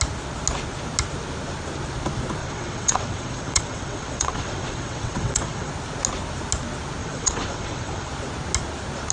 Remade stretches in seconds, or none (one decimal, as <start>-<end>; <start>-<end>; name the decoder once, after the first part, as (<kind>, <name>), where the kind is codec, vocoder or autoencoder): 2.4-5.7 (vocoder, WaveNeXt); 7.0-8.1